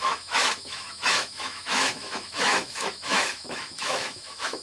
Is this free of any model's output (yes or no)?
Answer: no